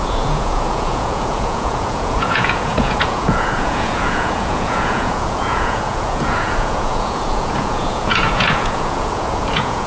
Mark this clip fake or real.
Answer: fake